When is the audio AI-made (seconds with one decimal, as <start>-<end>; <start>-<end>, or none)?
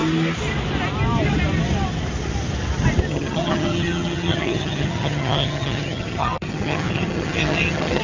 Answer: 3.1-8.0